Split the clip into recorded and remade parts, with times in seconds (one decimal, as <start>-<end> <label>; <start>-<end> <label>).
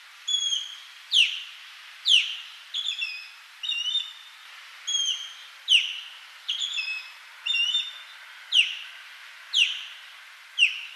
0.0-0.5 recorded; 0.5-1.4 remade; 1.4-11.0 recorded